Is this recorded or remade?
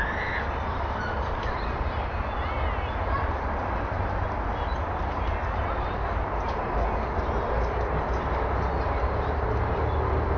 remade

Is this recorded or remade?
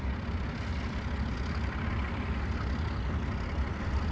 recorded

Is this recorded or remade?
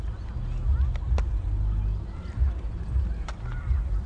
recorded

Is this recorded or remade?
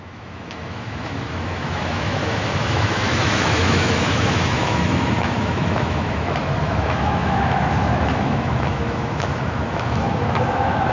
remade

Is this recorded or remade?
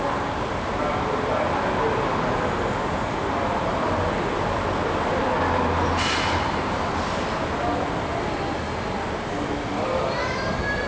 recorded